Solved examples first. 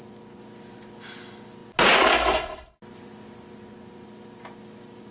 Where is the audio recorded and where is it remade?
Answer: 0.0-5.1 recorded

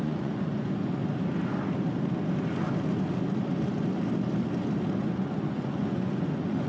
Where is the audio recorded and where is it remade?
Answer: 0.0-1.0 remade; 1.0-5.0 recorded; 5.0-6.7 remade

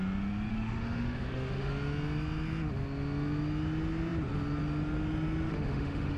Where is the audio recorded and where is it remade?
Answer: 0.0-0.5 recorded; 0.5-1.7 remade; 1.7-5.5 recorded; 5.5-6.2 remade

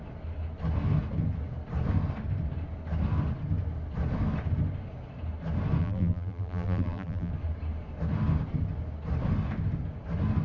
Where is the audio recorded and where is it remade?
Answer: 0.0-5.8 recorded; 5.8-7.3 remade; 7.3-10.4 recorded

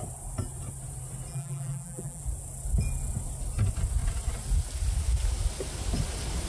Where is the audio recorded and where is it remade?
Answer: 0.0-1.3 recorded; 1.3-2.2 remade; 2.2-6.5 recorded

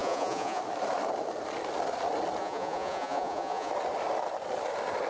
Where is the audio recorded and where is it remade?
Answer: 0.0-0.6 remade; 0.6-2.4 recorded; 2.4-3.7 remade; 3.7-5.1 recorded

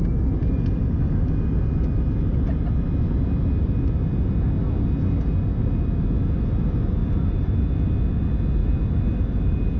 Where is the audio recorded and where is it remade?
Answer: 0.0-7.0 recorded; 7.0-7.7 remade; 7.7-8.6 recorded; 8.6-9.8 remade

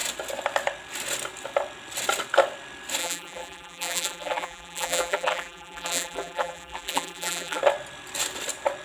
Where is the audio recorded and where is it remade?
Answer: 0.0-3.0 recorded; 3.0-7.6 remade; 7.6-8.8 recorded